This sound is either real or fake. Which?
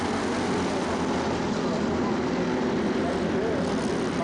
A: real